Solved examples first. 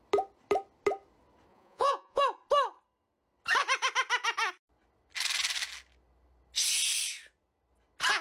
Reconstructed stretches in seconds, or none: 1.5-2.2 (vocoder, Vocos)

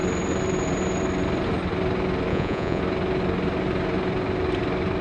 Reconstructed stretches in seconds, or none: 2.3-2.8 (vocoder, Vocos)

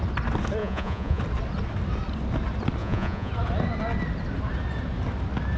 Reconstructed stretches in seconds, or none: 0.6-1.2 (vocoder, Vocos); 2.8-3.3